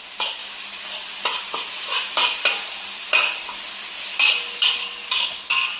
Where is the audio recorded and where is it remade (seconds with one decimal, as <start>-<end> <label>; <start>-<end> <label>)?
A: 0.0-5.8 recorded